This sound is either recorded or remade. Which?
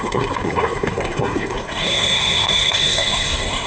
remade